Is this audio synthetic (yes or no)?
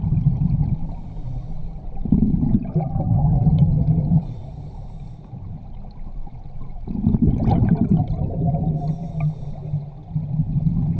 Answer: no